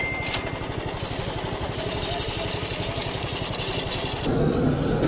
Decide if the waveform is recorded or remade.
recorded